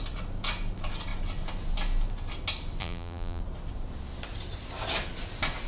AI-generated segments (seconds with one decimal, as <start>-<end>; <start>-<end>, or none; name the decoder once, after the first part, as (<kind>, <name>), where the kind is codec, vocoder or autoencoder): 2.8-3.4 (vocoder, BigVGAN v2)